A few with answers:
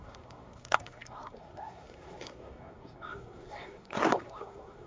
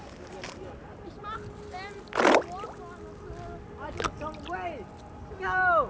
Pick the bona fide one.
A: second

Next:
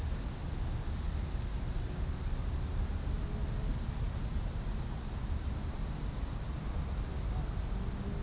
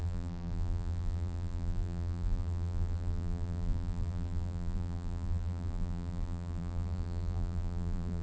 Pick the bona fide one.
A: first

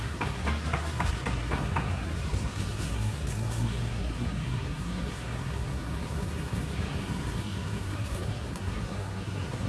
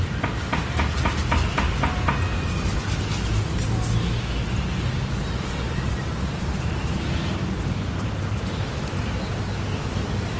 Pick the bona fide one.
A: second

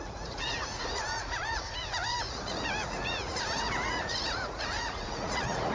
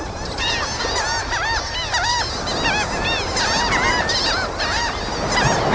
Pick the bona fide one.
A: second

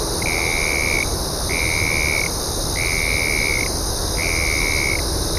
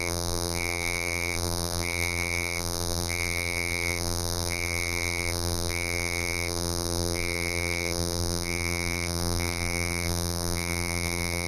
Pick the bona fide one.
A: first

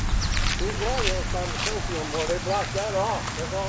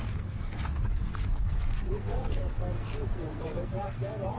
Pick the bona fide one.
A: first